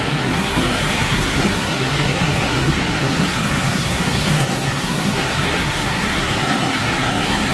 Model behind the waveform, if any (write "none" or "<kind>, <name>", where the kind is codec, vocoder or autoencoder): codec, SNAC